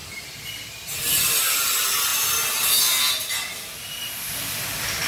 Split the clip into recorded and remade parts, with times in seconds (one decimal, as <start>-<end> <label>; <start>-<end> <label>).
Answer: 0.0-5.1 remade